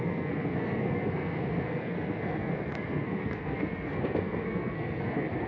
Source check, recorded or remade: remade